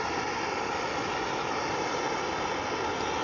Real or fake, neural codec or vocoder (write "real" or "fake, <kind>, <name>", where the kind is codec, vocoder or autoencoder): real